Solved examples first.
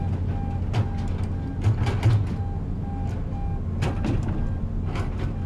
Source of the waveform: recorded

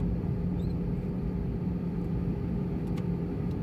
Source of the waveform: remade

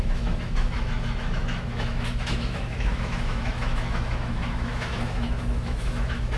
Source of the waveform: remade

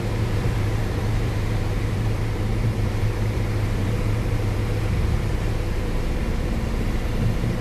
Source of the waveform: remade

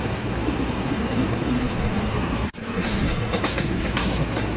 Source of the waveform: remade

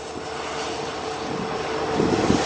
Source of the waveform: recorded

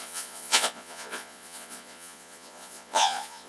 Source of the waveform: remade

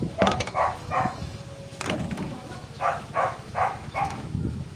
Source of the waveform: remade